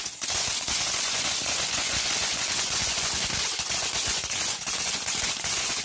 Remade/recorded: remade